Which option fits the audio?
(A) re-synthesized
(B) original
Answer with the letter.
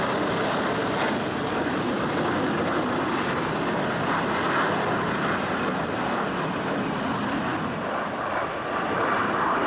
B